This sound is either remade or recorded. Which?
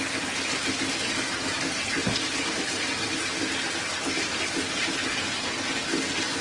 recorded